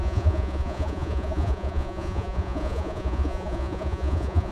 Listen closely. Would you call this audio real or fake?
fake